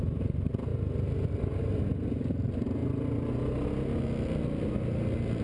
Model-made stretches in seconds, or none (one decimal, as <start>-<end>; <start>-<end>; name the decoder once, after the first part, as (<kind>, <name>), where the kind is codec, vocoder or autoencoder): none